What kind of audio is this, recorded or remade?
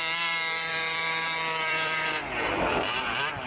remade